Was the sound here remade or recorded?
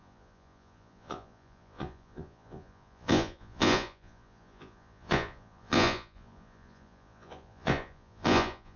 remade